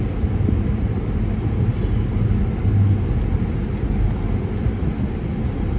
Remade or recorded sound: recorded